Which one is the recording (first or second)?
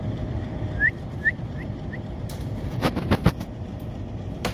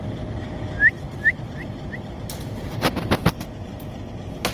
second